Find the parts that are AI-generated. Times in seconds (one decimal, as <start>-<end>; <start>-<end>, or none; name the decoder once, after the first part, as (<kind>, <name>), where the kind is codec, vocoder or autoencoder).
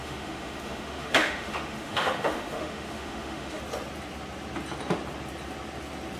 0.0-3.6 (autoencoder, DAC-VAE)